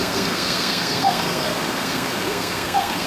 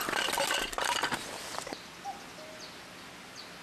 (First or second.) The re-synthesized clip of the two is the first